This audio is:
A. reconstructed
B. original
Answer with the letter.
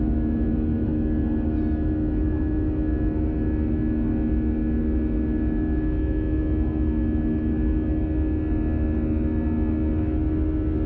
B